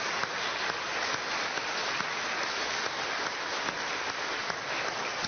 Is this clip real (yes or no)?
yes